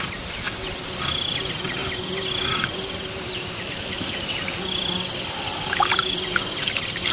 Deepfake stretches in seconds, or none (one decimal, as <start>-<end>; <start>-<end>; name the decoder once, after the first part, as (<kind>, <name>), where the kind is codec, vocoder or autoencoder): none